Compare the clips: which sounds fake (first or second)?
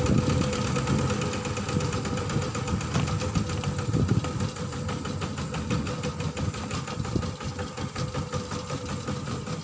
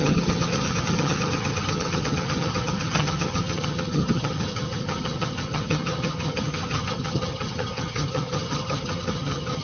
second